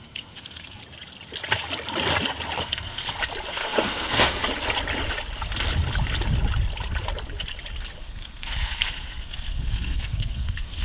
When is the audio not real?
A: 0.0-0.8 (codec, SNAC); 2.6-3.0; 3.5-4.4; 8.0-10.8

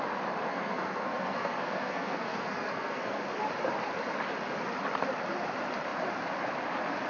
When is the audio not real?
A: 0.5-3.2 (codec, SNAC)

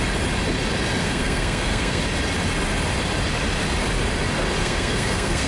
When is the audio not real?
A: 1.0-2.0 (codec, SNAC); 4.6-5.5

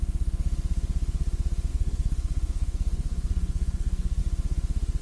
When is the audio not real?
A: 1.7-4.2 (codec, SNAC)